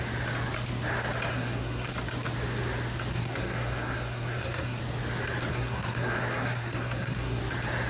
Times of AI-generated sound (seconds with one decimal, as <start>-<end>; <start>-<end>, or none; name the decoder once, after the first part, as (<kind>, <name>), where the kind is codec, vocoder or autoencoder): 1.3-1.9 (codec, SNAC); 3.1-4.8; 5.5-7.4